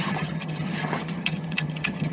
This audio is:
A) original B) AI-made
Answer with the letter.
B